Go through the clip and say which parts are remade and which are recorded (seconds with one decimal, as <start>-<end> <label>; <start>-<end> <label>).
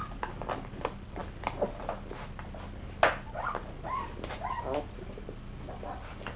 0.0-6.4 recorded